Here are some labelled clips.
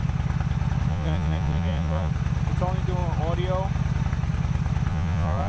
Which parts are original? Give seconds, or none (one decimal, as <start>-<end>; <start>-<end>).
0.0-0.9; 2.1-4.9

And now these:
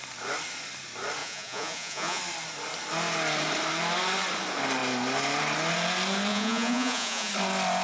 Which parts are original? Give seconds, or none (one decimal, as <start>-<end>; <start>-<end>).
0.0-1.2; 2.2-6.3; 7.3-7.8

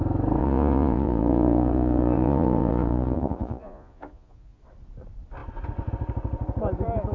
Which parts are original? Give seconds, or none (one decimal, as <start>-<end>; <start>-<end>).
0.0-0.4; 4.6-7.1

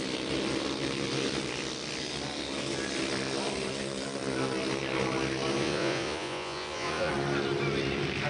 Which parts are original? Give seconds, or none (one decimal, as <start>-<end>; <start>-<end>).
0.0-5.6; 7.1-8.3

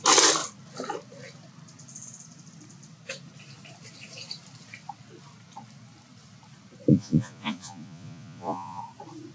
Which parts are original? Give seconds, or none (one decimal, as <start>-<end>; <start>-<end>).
0.0-6.9; 8.8-9.3

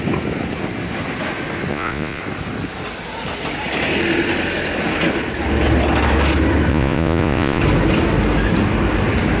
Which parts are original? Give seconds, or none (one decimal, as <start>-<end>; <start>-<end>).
0.0-1.7; 2.2-6.7; 7.6-9.4

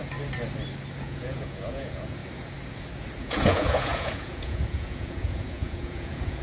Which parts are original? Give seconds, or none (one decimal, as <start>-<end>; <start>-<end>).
0.0-1.0; 2.2-3.2